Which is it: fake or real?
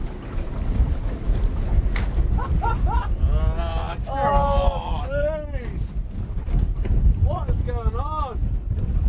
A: real